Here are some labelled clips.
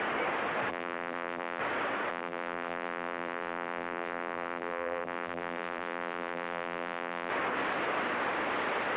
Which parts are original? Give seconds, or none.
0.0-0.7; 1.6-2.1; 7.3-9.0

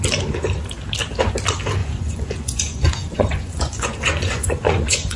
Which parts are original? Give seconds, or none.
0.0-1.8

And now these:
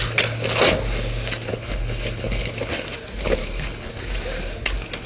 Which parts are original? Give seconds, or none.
0.0-1.5; 2.5-3.4; 3.9-5.1